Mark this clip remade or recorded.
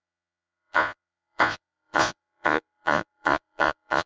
remade